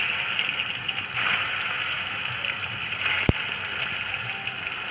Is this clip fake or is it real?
real